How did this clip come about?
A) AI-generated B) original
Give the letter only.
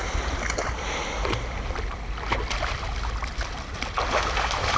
A